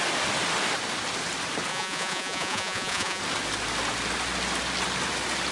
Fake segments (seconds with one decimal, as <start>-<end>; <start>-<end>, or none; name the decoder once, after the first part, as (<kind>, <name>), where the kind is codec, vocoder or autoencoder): 1.7-3.2 (vocoder, Vocos)